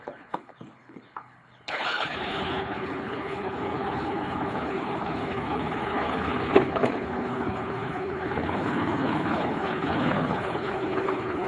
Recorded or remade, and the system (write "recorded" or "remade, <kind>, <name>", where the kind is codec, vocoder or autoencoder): remade, codec, HILCodec